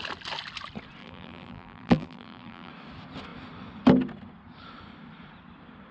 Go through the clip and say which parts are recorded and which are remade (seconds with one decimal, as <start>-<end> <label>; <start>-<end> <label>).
0.0-1.0 recorded; 1.0-2.7 remade; 2.7-5.9 recorded